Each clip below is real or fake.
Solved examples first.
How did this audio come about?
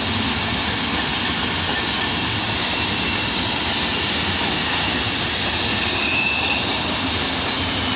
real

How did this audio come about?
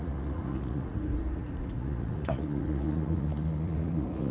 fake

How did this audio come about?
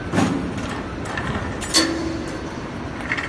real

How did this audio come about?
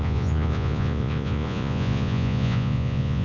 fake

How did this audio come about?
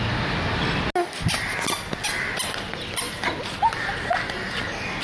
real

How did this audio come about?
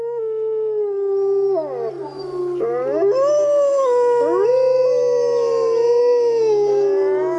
real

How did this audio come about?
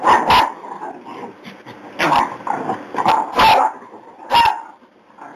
real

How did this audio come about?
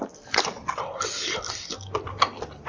real